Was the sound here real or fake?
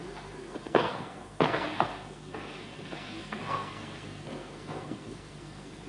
fake